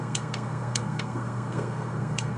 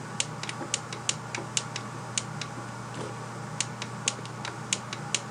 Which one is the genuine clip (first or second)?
second